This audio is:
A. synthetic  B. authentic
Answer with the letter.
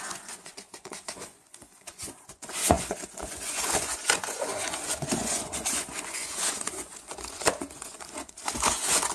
A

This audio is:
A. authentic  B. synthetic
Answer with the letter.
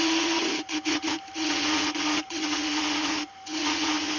B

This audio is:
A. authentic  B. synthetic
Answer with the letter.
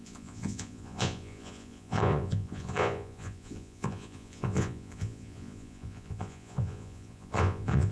B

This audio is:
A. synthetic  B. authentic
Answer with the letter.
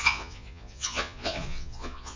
A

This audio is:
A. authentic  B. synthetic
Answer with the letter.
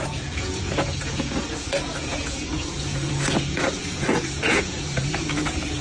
B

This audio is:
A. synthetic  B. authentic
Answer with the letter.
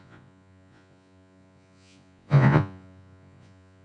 A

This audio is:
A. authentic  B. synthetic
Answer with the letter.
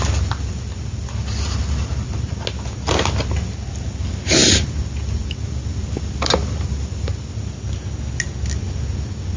A